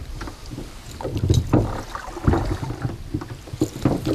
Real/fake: real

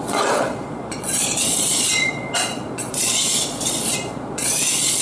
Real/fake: fake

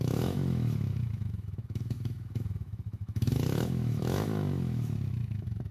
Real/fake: fake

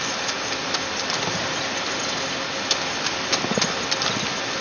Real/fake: real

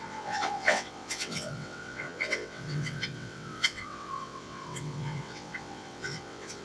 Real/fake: fake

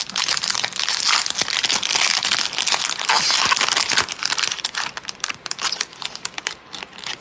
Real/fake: real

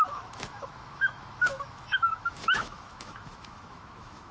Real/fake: fake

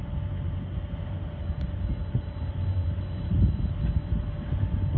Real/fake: real